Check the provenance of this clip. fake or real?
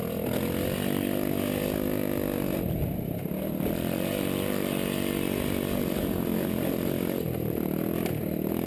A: real